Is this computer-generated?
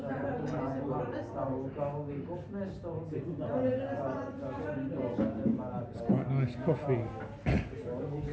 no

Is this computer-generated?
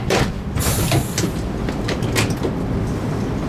no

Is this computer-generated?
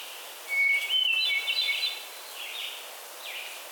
yes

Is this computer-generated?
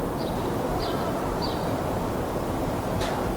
yes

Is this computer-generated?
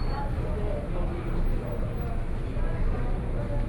no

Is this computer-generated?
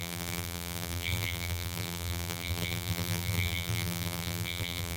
yes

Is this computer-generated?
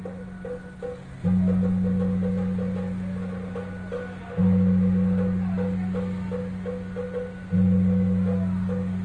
no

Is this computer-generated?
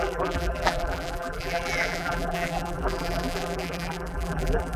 yes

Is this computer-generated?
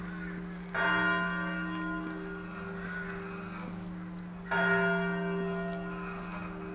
no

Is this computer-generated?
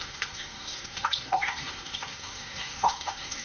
yes